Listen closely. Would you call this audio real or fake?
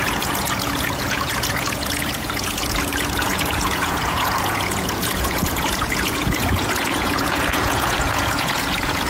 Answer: fake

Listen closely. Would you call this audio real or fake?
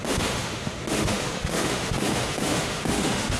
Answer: fake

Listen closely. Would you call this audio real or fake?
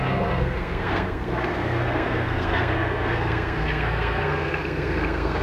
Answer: fake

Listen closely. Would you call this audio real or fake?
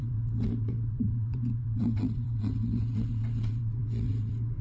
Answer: fake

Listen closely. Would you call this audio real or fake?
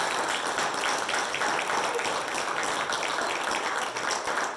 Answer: real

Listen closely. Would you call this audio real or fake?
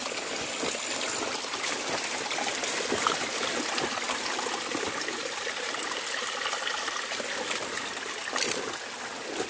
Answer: real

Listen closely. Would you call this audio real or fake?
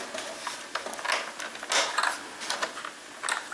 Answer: real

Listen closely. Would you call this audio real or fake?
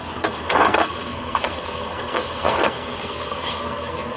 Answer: fake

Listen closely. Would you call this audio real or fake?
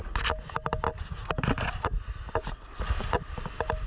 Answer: real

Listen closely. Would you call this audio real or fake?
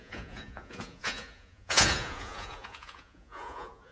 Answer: fake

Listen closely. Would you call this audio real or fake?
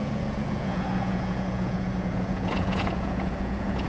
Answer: fake